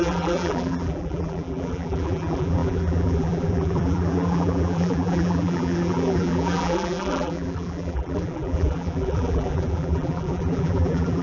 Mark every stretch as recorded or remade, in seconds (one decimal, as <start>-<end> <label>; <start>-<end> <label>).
0.0-11.2 remade